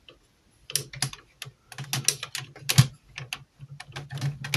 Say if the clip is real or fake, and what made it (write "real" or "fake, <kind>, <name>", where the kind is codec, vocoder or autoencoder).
real